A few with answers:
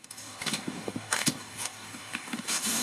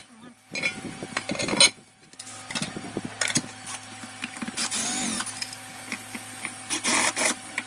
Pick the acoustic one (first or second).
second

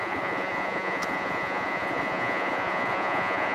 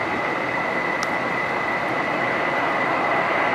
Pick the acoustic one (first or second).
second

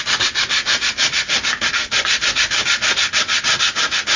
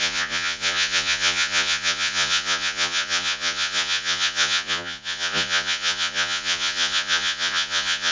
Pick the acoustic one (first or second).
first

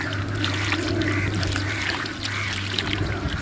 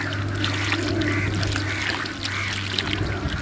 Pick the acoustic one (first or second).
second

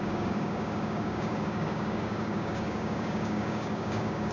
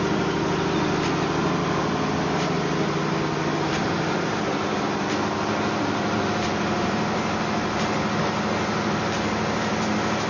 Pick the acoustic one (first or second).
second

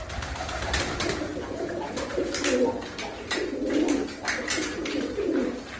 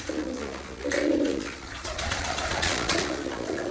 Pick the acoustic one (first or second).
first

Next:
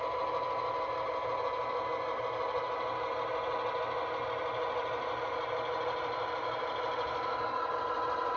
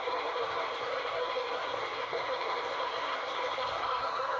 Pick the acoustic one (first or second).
first